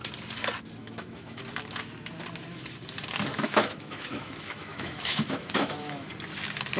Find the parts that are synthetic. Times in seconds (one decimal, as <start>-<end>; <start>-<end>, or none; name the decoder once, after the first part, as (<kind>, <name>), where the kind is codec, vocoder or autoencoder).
0.8-1.4 (autoencoder, DAC-VAE); 3.3-6.1